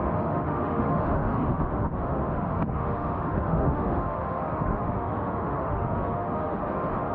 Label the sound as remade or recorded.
remade